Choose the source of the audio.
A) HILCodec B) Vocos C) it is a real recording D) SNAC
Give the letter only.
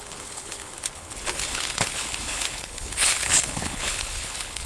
A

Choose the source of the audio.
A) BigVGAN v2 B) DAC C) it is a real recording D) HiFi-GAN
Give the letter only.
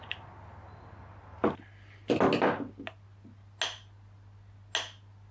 C